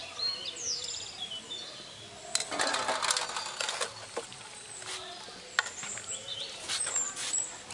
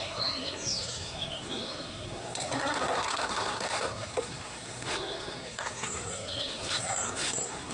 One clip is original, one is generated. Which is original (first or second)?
first